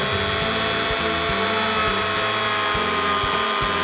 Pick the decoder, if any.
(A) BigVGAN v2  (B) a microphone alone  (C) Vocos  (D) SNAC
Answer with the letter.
B